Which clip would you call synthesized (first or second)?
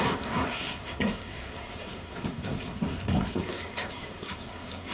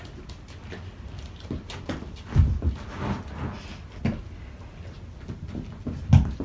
first